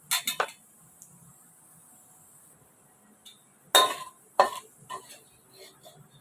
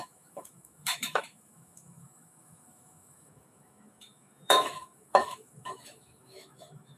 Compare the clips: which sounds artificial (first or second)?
second